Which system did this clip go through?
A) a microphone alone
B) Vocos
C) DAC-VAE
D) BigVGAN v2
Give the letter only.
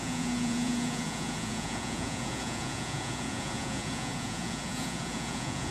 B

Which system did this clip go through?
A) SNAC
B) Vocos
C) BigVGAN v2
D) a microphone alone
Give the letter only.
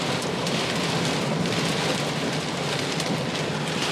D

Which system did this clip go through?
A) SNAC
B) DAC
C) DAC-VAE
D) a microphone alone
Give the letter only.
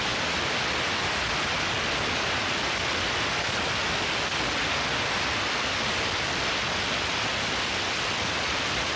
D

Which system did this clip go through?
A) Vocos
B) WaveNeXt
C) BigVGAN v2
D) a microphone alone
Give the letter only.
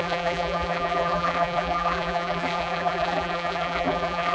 C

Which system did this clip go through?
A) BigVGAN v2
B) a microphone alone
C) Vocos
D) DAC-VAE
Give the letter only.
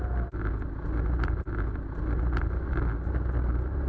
B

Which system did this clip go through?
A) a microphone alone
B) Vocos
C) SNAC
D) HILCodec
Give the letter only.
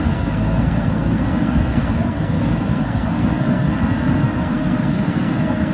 C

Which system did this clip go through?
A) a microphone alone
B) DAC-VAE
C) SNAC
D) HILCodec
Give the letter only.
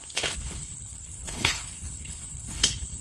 D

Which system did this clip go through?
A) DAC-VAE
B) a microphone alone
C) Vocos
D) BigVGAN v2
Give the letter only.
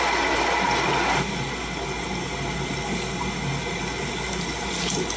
B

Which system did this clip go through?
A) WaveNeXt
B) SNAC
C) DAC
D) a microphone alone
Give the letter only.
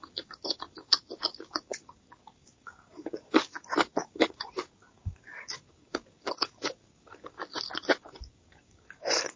C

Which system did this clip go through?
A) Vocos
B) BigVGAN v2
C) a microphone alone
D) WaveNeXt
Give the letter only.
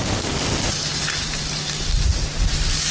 C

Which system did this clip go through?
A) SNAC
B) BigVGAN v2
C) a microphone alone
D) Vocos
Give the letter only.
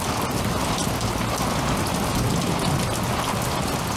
C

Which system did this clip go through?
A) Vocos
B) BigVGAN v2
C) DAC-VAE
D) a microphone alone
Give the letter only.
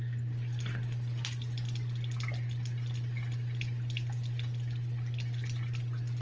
D